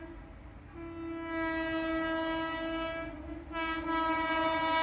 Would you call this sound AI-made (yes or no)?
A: no